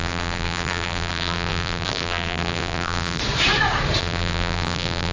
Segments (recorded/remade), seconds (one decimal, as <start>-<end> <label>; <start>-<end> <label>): 0.0-3.2 remade; 3.2-4.0 recorded; 4.0-5.1 remade